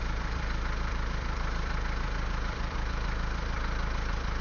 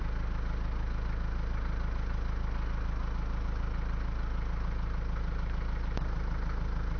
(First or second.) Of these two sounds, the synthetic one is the first